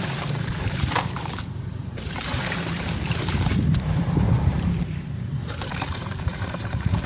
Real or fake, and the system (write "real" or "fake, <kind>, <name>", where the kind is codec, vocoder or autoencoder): fake, vocoder, BigVGAN v2